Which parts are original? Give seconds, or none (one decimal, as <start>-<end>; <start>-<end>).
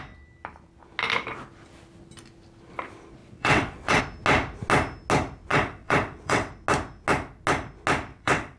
0.0-3.2; 4.0-5.5; 6.5-8.1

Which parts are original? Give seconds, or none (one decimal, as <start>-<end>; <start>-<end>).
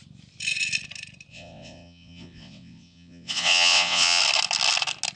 0.0-1.3; 4.2-5.2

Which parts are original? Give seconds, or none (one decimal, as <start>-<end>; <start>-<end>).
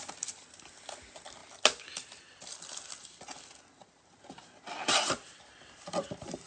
0.0-6.5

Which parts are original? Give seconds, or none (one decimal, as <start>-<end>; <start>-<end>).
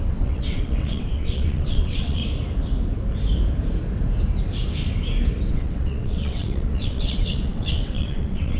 2.2-5.5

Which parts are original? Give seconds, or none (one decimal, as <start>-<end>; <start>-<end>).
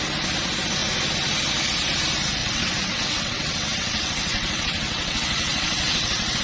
0.0-2.4